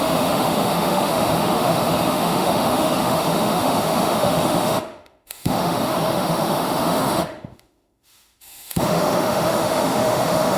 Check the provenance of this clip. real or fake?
fake